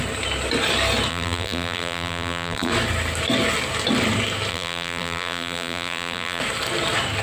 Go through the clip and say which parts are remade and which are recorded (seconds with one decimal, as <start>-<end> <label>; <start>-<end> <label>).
0.0-1.1 recorded; 1.1-2.7 remade; 2.7-4.5 recorded; 4.5-6.4 remade; 6.4-7.2 recorded